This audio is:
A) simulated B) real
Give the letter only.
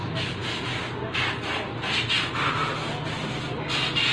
B